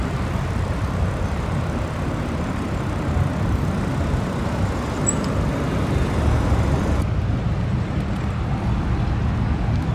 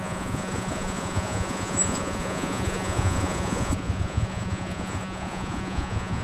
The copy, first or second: second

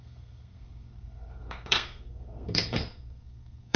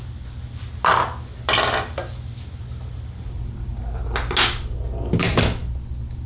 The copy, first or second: first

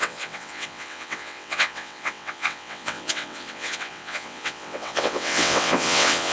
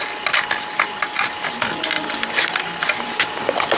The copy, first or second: first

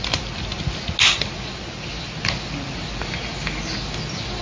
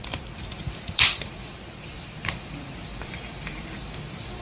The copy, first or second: second